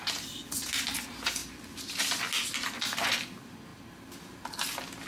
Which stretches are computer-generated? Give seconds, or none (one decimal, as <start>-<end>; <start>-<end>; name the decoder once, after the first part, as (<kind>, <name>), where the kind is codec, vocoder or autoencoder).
1.4-2.2 (vocoder, BigVGAN v2)